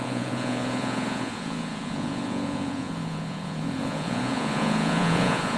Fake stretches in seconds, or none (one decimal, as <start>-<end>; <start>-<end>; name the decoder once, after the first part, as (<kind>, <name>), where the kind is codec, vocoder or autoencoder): 0.0-5.6 (vocoder, Vocos)